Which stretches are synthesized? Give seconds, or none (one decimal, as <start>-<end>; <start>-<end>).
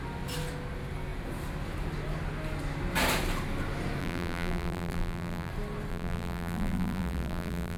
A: 4.0-5.5; 5.9-7.8